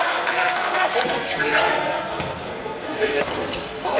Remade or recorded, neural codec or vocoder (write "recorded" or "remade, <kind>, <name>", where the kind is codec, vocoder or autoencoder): remade, codec, SNAC